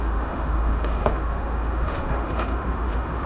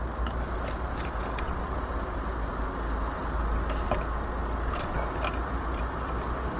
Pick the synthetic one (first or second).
first